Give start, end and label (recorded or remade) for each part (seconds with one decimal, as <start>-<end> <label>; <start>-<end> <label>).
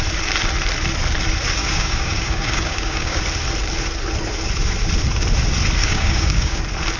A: 0.0-1.6 recorded; 1.6-3.2 remade; 3.2-5.8 recorded; 5.8-6.6 remade; 6.6-7.0 recorded